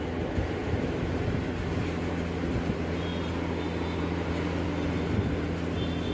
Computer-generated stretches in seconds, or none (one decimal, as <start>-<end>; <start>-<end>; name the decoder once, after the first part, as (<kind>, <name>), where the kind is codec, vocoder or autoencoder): none